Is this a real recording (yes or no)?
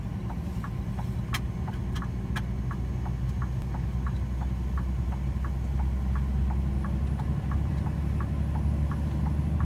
yes